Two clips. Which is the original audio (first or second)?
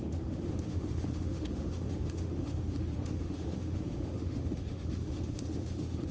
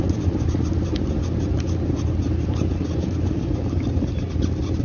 second